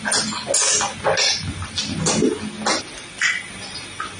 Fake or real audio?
real